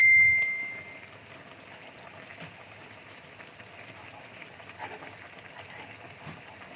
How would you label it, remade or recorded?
recorded